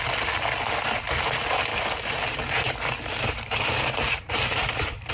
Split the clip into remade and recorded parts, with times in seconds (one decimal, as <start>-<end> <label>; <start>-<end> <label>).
0.0-1.7 recorded; 1.7-5.1 remade